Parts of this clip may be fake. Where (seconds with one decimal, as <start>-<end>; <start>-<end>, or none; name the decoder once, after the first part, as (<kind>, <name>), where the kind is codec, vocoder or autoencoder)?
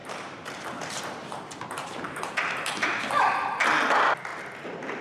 0.0-3.0 (vocoder, BigVGAN v2)